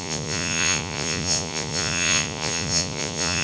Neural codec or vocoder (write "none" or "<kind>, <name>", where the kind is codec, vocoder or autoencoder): vocoder, Vocos